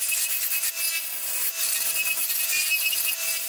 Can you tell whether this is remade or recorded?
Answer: recorded